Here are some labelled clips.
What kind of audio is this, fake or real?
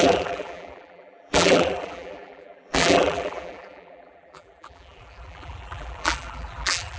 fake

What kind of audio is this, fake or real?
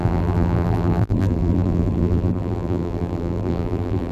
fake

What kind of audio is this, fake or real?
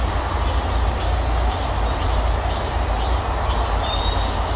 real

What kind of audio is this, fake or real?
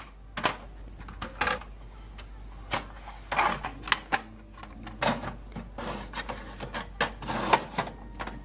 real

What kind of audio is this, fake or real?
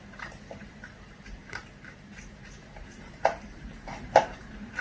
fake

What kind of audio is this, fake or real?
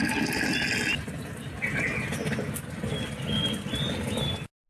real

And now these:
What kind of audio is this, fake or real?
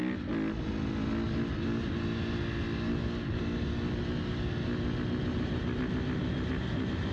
real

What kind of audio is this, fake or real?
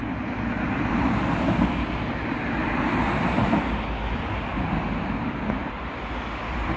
fake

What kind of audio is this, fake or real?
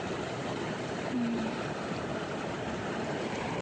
fake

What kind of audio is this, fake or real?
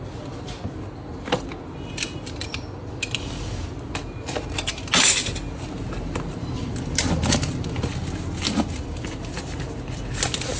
real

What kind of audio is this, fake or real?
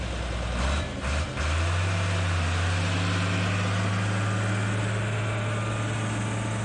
real